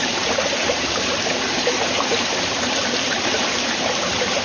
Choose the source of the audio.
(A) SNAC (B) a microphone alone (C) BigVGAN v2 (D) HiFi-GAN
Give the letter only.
C